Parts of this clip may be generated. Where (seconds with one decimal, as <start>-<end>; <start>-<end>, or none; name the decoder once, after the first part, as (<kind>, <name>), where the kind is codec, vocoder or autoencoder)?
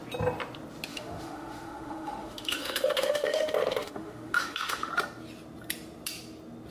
0.9-4.9 (autoencoder, DAC-VAE)